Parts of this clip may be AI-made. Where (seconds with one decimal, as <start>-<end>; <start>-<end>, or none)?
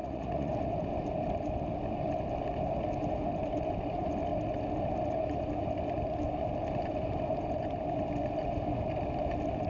0.0-0.5